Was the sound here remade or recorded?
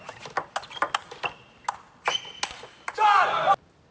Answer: recorded